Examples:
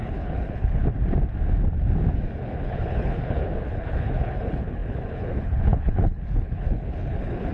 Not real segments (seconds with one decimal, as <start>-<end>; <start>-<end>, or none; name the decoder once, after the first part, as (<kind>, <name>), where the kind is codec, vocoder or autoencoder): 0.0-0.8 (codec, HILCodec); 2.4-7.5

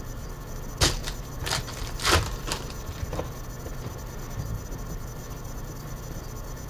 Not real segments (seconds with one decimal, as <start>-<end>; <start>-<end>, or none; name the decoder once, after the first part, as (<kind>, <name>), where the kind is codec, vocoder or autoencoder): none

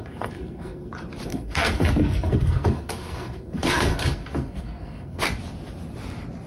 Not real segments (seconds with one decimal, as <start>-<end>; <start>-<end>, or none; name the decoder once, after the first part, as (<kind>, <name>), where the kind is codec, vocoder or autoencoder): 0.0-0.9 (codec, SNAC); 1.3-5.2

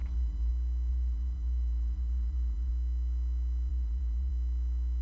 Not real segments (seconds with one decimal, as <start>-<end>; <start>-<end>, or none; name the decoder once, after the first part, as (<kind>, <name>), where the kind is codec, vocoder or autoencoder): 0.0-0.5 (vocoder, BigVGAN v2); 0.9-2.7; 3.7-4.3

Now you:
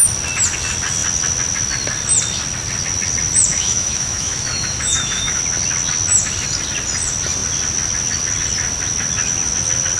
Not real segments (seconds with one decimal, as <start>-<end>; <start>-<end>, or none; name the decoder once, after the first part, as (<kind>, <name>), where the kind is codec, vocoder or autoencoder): 3.5-5.4 (autoencoder, DAC-VAE)

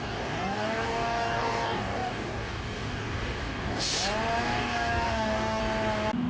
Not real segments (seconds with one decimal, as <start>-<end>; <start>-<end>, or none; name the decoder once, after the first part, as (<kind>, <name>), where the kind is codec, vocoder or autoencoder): 0.0-3.9 (codec, DAC); 4.4-5.6

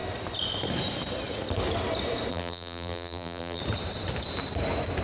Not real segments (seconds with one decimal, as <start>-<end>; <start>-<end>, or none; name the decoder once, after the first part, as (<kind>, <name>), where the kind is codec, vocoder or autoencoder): 2.3-3.6 (vocoder, BigVGAN v2)